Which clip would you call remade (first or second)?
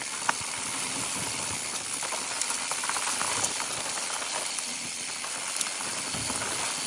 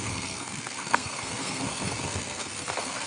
second